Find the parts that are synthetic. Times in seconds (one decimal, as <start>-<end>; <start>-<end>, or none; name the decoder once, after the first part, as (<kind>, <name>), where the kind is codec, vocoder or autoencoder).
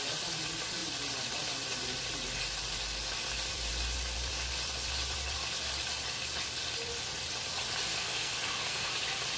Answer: 7.9-8.9 (codec, SNAC)